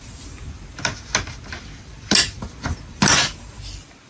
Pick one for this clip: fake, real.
real